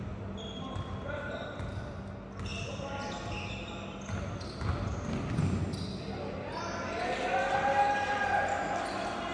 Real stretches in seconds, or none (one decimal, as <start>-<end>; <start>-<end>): 0.0-2.5; 3.1-9.3